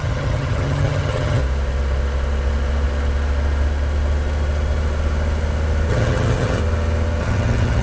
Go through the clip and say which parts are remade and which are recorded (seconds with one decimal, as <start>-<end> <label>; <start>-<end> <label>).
0.0-1.4 remade; 1.4-5.9 recorded; 5.9-6.6 remade; 6.6-7.2 recorded; 7.2-7.8 remade